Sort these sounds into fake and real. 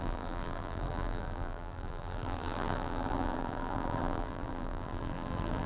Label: fake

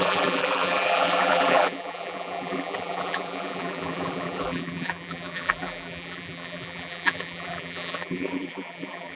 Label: fake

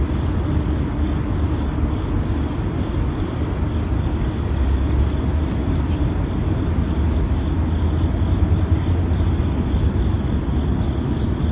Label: real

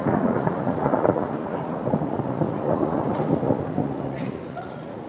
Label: fake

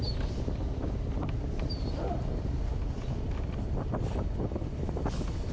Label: fake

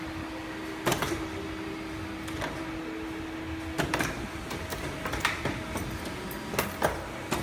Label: real